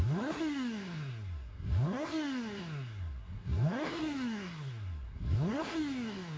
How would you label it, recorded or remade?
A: remade